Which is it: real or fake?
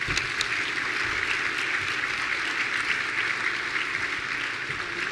real